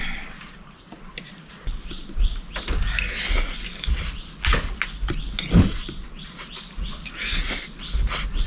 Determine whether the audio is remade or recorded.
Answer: recorded